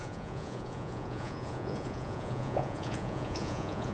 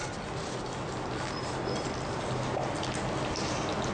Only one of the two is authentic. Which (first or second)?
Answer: second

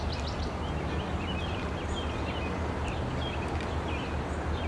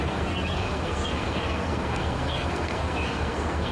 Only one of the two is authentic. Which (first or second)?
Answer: first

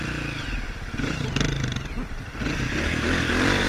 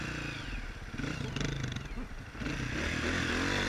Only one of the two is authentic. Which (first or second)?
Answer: second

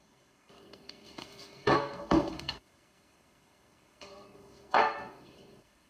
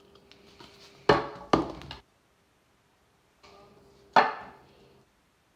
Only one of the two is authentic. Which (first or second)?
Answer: second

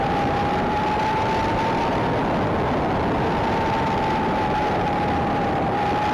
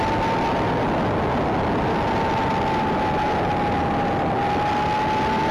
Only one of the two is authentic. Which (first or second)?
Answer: second